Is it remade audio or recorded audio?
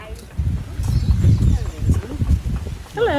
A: recorded